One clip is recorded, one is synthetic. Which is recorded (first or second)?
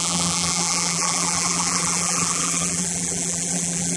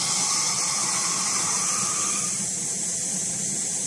second